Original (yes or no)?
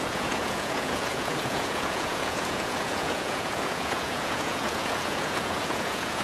no